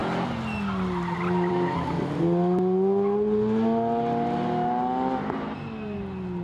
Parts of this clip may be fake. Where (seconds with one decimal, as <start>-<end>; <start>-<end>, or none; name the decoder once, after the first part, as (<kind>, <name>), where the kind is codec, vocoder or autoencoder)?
none